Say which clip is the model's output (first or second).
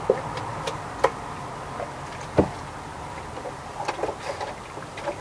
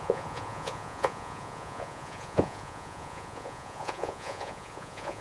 second